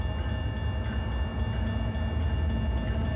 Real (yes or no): yes